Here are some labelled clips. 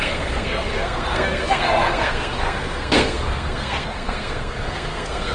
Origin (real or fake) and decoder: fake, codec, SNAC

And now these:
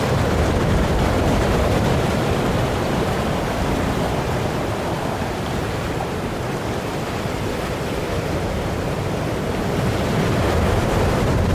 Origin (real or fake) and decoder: fake, vocoder, BigVGAN v2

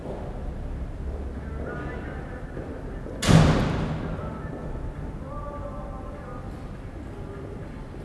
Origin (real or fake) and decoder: real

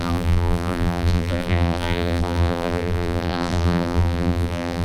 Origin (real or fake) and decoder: fake, vocoder, BigVGAN v2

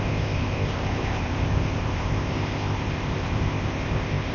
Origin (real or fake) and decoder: fake, codec, ZipCodec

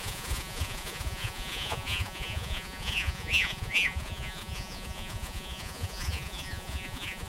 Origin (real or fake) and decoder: fake, vocoder, Vocos